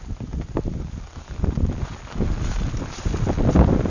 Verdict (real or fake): real